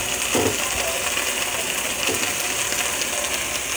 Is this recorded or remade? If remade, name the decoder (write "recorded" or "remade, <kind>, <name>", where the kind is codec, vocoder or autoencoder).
recorded